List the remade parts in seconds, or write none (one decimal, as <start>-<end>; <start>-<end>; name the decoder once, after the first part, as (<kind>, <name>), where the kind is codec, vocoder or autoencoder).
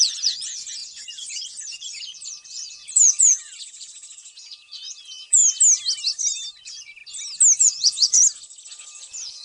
0.0-5.4 (vocoder, Vocos); 6.6-7.0; 7.6-8.2; 8.7-9.4